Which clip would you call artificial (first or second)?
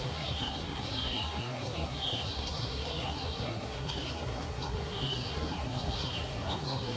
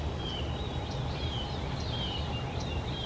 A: first